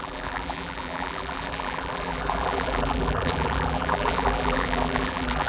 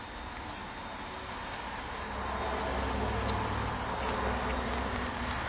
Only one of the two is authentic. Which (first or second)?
second